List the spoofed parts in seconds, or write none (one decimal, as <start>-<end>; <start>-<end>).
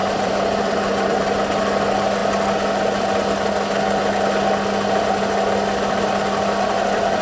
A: 0.0-1.2